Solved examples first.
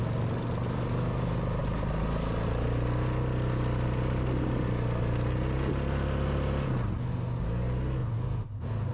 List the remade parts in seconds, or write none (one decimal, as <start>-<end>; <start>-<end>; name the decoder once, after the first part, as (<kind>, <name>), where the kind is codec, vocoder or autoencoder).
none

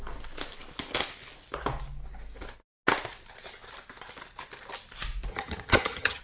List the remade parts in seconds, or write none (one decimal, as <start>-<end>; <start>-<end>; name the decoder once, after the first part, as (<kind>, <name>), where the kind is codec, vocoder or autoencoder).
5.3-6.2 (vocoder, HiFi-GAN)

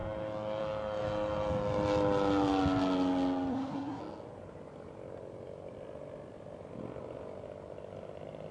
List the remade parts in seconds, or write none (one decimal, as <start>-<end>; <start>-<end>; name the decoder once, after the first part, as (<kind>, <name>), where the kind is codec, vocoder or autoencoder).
3.5-4.0 (codec, SNAC)